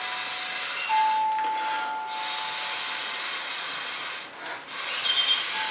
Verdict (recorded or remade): recorded